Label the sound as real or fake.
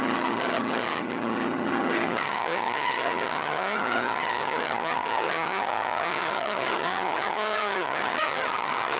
fake